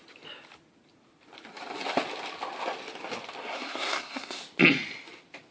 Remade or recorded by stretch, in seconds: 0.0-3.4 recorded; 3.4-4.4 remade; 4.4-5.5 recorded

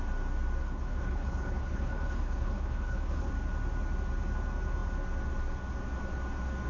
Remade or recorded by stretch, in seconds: 0.0-0.6 recorded; 0.6-3.3 remade; 3.3-6.7 recorded

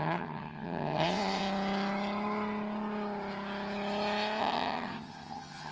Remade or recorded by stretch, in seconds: 0.0-1.4 remade; 1.4-4.4 recorded; 4.4-5.7 remade

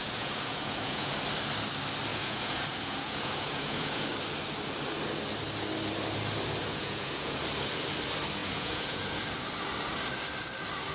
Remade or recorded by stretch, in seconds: 0.0-1.1 remade; 1.1-2.1 recorded; 2.1-4.1 remade; 4.1-6.6 recorded; 6.6-7.4 remade; 7.4-8.4 recorded; 8.4-9.2 remade; 9.2-10.9 recorded

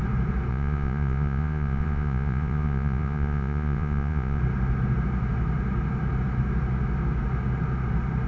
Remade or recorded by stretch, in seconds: 0.0-0.5 recorded; 0.5-4.4 remade; 4.4-8.3 recorded